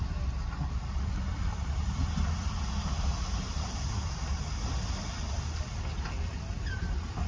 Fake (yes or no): no